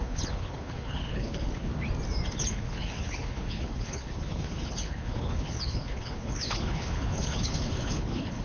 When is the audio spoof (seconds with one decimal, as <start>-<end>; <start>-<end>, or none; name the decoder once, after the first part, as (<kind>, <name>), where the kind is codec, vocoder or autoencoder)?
0.0-1.7 (codec, HILCodec); 2.3-8.4